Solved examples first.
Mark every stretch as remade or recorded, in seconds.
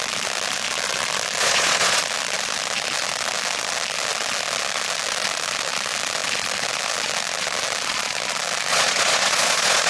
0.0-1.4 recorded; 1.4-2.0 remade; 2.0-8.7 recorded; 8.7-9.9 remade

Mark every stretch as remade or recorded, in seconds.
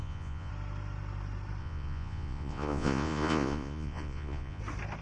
0.0-0.5 remade; 0.5-1.6 recorded; 1.6-4.6 remade; 4.6-5.0 recorded